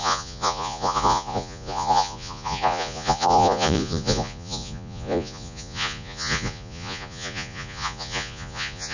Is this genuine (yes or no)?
no